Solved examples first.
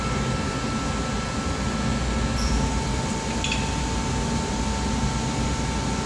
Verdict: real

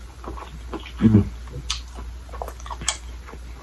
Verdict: real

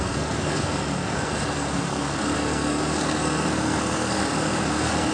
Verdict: fake